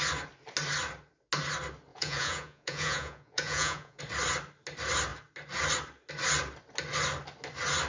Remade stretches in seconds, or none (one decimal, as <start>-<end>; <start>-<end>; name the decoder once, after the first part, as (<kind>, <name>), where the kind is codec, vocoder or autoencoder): 1.9-4.0 (vocoder, Vocos)

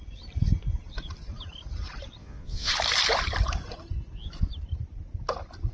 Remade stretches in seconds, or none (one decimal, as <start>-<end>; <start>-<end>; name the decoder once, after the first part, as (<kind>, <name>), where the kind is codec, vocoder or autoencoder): 2.2-2.7 (vocoder, Vocos)

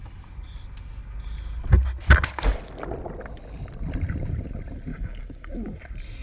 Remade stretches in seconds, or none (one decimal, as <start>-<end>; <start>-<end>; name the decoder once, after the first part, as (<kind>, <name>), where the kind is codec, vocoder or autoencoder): 4.9-5.5 (codec, DAC)

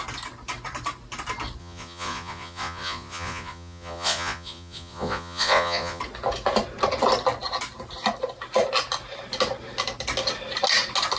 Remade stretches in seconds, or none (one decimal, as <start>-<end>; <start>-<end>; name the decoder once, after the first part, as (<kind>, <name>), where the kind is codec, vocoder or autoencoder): 1.6-6.0 (vocoder, Vocos)

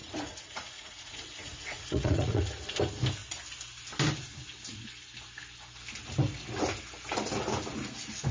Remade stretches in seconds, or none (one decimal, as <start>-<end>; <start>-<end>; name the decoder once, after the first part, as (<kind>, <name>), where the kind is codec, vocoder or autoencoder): 0.0-2.4 (vocoder, Vocos)

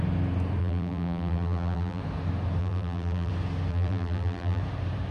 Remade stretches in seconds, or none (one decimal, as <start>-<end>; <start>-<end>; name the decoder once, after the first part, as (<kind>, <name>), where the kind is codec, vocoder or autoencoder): 0.6-2.0 (vocoder, BigVGAN v2); 2.6-3.3; 3.7-4.6

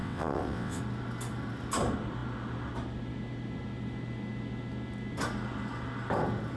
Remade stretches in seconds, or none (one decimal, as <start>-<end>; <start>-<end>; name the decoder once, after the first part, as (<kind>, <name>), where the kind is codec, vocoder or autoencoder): 0.0-0.8 (vocoder, WaveNeXt)

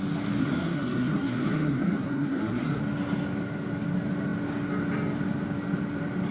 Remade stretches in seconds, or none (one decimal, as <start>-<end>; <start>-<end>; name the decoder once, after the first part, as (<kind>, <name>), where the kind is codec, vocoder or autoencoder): 0.4-2.8 (codec, SNAC)